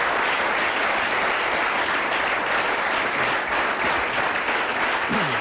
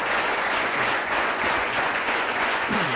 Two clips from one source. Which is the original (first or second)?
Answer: first